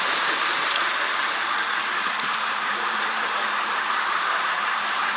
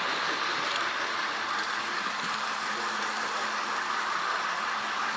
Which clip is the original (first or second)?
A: second